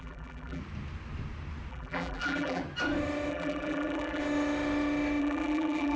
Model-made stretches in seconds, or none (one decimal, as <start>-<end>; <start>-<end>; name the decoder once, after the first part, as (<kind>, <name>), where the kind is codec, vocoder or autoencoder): 0.0-0.6 (vocoder, BigVGAN v2); 1.7-2.6; 3.3-4.2; 5.2-6.0

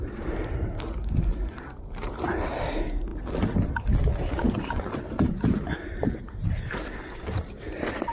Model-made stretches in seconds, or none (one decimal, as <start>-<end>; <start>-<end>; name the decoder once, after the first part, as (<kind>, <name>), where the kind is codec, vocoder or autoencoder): 0.0-3.1 (vocoder, BigVGAN v2); 4.5-8.1

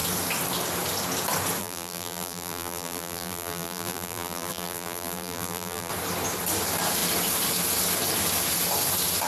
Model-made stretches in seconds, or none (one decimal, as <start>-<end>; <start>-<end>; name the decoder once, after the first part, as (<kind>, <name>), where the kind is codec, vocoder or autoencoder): 1.6-5.9 (vocoder, BigVGAN v2)

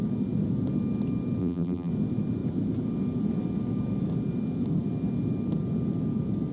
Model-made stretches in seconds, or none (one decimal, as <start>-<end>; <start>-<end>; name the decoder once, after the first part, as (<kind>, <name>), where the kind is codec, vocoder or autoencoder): 1.4-1.9 (vocoder, BigVGAN v2)

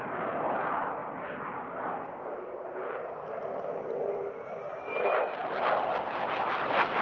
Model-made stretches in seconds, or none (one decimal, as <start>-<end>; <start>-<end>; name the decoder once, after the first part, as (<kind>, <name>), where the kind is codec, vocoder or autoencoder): none